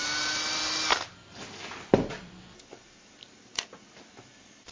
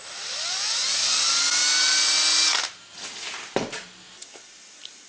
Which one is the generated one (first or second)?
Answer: first